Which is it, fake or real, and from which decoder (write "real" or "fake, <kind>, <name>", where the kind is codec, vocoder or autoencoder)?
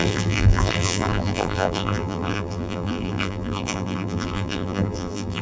fake, vocoder, BigVGAN v2